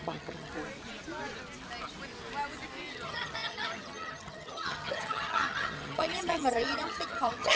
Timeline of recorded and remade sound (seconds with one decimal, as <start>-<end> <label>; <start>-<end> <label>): 0.0-0.5 remade; 0.5-2.9 recorded; 2.9-7.6 remade